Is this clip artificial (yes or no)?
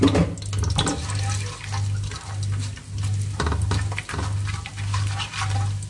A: no